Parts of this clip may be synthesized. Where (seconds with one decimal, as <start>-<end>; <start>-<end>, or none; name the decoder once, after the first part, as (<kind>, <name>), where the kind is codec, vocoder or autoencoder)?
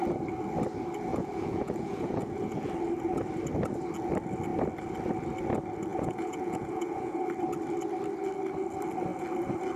1.1-2.7 (vocoder, Vocos); 5.9-7.2